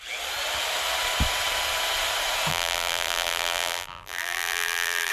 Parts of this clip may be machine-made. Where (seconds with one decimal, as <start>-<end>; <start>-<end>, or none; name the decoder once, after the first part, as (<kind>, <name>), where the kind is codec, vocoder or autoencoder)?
2.5-5.1 (vocoder, BigVGAN v2)